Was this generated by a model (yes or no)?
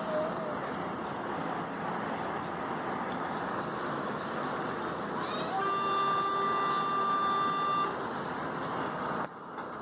no